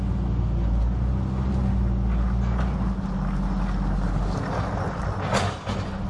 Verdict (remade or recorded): recorded